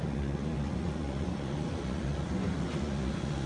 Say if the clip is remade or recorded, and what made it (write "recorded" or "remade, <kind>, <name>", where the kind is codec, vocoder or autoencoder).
remade, vocoder, Vocos